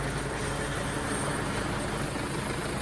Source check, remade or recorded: remade